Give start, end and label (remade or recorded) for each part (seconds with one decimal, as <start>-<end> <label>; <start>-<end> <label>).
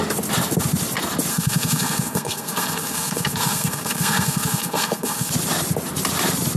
0.0-1.3 recorded; 1.3-5.3 remade; 5.3-6.6 recorded